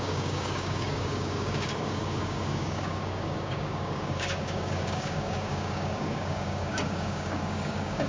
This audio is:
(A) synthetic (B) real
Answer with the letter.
A